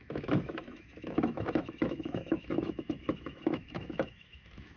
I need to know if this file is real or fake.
fake